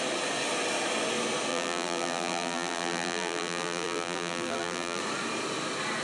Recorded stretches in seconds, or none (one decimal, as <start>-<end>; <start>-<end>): 0.0-1.5; 5.0-6.0

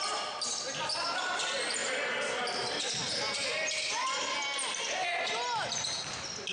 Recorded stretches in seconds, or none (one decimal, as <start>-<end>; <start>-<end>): 0.0-6.5